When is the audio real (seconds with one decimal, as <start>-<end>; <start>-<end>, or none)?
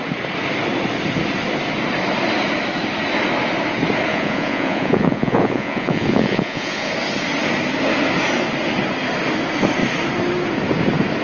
0.0-4.1; 6.9-11.2